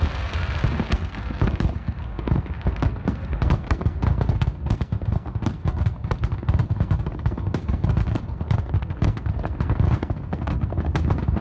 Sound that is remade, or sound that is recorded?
remade